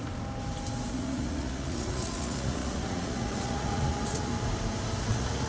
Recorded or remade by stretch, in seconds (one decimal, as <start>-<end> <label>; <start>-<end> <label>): 0.0-0.9 recorded; 0.9-4.3 remade; 4.3-5.0 recorded; 5.0-5.5 remade